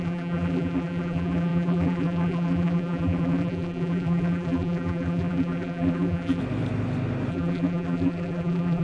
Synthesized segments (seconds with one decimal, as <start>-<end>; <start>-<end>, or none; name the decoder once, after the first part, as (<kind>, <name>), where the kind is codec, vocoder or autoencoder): 0.0-6.4 (vocoder, BigVGAN v2); 7.3-8.8